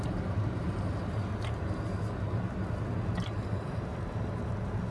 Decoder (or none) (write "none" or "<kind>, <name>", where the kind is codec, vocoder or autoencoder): none